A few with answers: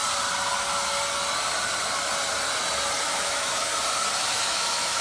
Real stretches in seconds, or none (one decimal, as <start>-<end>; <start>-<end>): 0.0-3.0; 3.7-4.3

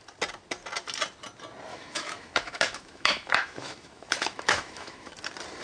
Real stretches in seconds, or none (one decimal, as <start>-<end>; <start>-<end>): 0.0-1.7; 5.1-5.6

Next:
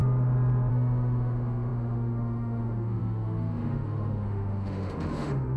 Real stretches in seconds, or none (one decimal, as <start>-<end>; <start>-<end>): 0.0-0.7